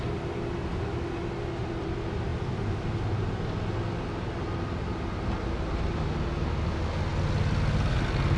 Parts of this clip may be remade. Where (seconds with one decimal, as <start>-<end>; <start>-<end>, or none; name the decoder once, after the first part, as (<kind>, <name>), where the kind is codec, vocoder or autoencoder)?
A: none